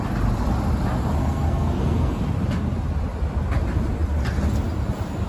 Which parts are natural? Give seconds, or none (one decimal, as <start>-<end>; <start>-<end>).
0.0-1.2; 2.2-5.3